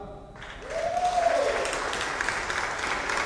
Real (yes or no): yes